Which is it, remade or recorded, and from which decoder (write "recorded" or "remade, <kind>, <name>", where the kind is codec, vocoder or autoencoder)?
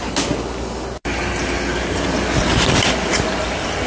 recorded